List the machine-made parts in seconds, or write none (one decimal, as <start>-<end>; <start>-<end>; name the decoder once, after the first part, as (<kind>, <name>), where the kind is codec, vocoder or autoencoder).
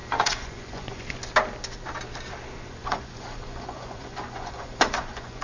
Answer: 0.0-1.2 (vocoder, Vocos); 2.6-5.4